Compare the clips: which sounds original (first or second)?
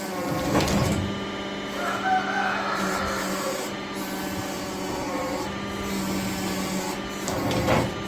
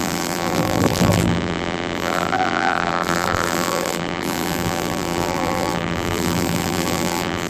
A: first